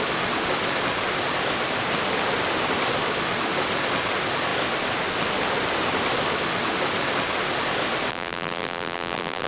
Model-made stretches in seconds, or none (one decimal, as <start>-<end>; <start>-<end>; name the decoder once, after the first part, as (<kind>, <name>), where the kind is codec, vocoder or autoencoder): 8.1-9.5 (vocoder, BigVGAN v2)